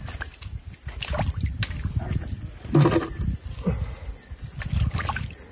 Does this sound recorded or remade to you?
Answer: recorded